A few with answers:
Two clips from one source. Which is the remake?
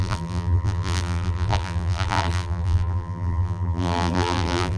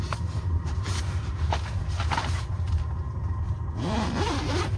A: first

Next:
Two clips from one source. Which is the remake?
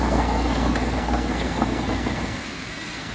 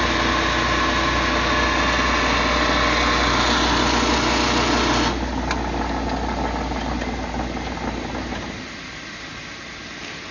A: first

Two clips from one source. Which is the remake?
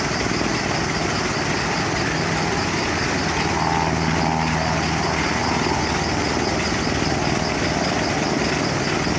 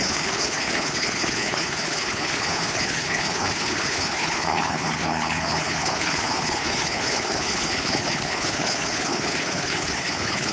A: second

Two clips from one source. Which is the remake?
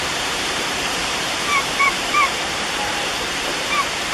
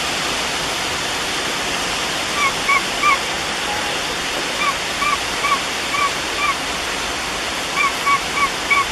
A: first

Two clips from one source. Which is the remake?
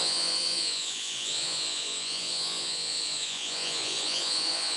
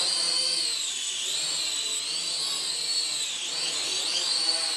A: first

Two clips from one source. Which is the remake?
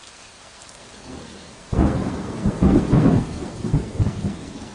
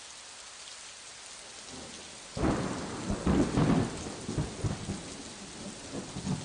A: first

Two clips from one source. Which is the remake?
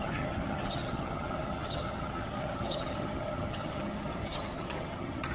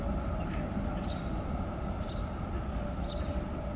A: first